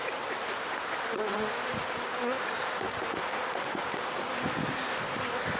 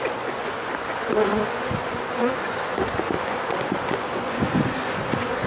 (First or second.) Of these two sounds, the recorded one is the first